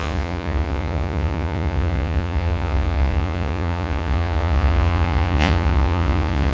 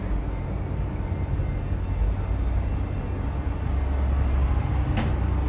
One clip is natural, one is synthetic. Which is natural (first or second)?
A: second